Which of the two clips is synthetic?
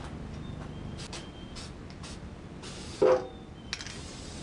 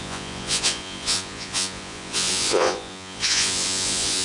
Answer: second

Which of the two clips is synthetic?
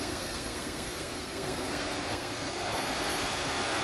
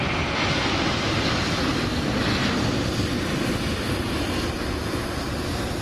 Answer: first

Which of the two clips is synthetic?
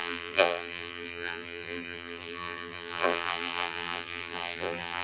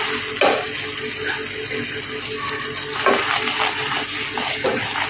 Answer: first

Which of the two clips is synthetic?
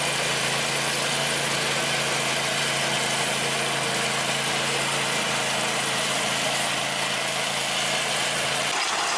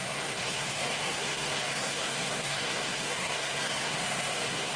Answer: second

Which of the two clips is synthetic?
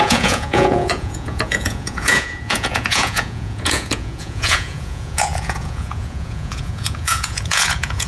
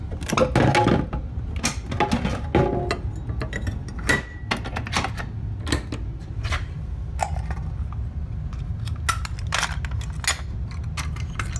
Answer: first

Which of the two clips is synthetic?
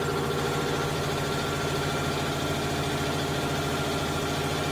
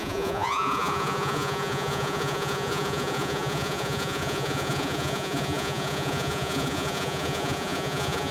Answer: second